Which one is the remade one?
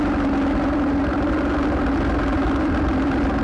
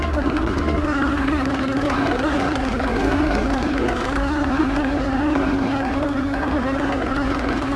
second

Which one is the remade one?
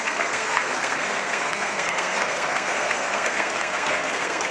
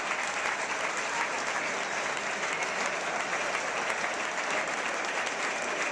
first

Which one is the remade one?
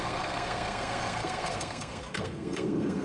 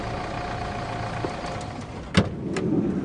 first